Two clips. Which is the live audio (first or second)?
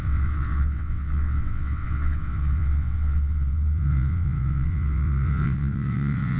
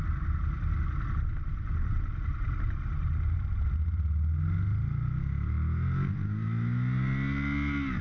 second